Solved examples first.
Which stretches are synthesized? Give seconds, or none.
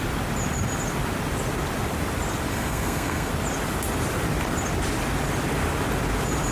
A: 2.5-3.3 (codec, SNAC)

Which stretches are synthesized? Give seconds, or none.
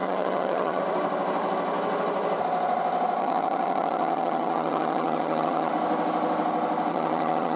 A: 0.0-0.8 (vocoder, HiFi-GAN); 3.2-5.7; 6.9-7.6